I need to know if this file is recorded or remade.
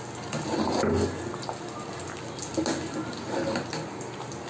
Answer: recorded